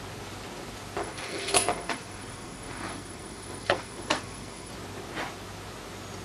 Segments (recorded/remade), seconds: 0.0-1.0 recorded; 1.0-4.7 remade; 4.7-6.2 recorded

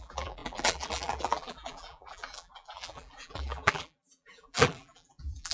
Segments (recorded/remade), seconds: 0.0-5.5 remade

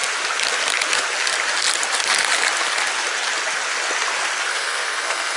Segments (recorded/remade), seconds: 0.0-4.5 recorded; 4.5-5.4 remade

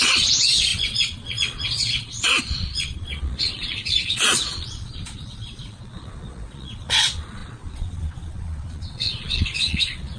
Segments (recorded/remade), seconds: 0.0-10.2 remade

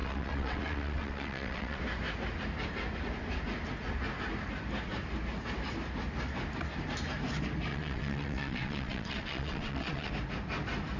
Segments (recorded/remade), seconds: 0.0-1.8 remade; 1.8-7.7 recorded; 7.7-10.1 remade; 10.1-11.0 recorded